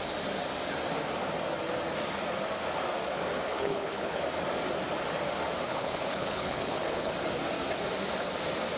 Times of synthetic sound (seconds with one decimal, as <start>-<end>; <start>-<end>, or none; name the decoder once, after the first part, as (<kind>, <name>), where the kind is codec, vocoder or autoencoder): 3.5-4.2 (codec, HILCodec); 5.7-7.1